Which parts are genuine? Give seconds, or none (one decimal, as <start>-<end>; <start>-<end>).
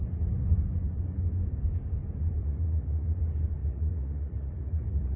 0.0-2.4; 3.2-3.6